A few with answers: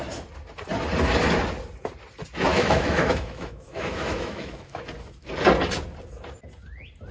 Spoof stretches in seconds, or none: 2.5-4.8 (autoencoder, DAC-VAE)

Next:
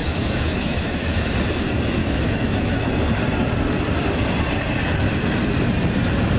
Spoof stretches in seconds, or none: 0.0-1.3 (autoencoder, DAC-VAE); 2.0-2.8

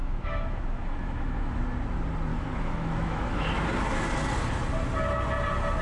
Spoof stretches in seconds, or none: 0.0-1.6 (autoencoder, DAC-VAE); 2.3-3.6

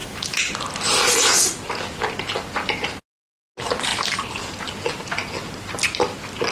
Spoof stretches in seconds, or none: 0.0-0.5 (autoencoder, DAC-VAE)

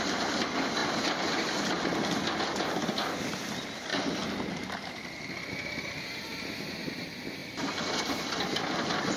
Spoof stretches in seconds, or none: none